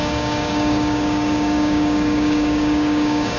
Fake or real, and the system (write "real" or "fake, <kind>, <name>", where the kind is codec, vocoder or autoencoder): fake, codec, DAC